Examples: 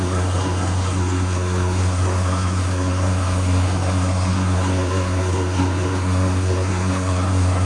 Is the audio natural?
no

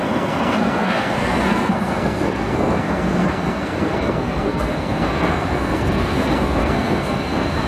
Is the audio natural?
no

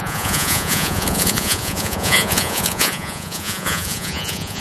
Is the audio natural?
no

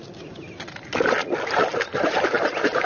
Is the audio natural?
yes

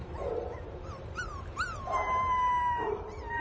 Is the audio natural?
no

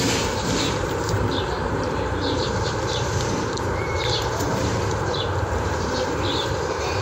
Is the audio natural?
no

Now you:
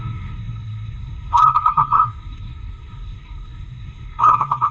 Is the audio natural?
no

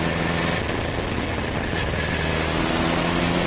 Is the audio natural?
yes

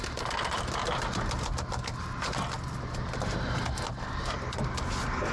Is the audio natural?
yes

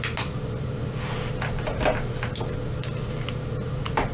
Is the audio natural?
yes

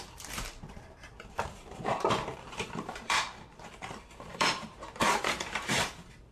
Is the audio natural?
no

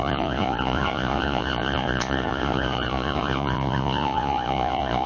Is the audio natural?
no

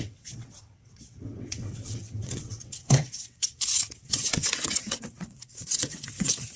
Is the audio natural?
no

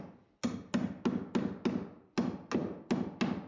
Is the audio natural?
yes